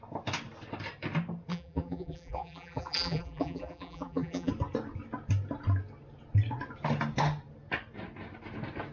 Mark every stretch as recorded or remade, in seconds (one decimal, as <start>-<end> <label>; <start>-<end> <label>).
0.0-1.5 recorded; 1.5-4.5 remade; 4.5-8.9 recorded